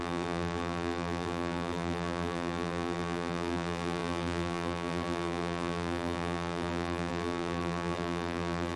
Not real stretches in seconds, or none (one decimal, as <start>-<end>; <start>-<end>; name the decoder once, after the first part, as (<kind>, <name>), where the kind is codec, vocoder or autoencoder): 0.0-8.8 (vocoder, BigVGAN v2)